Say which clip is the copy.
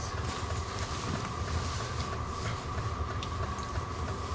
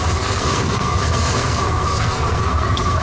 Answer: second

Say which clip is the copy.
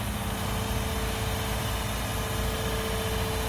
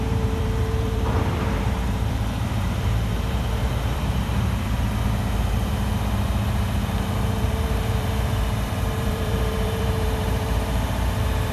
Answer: second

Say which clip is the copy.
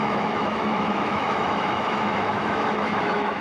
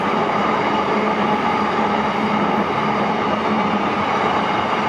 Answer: first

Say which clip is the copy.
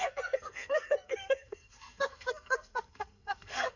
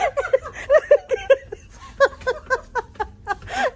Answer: first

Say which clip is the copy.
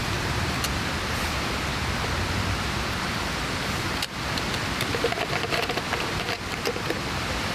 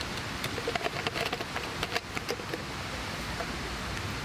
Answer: first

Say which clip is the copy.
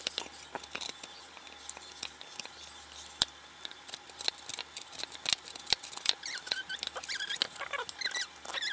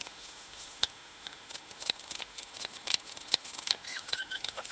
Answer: second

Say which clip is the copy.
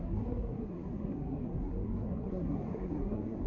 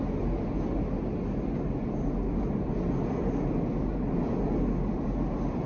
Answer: first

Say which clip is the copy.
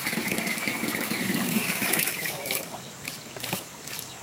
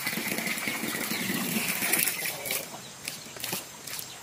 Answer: first